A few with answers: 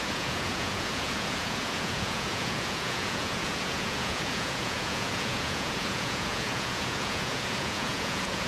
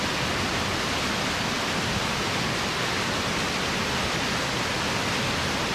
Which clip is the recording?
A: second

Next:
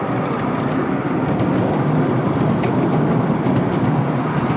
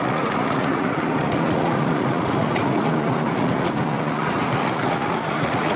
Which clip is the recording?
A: first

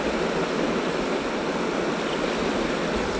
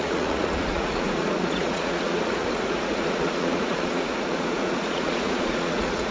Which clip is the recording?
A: first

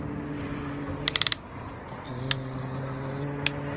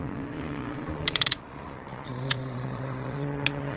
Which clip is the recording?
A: first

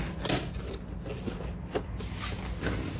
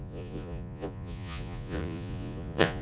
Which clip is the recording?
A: first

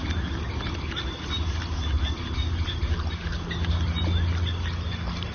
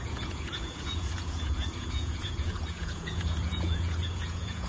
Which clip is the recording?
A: first